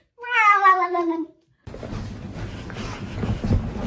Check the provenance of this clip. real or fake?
real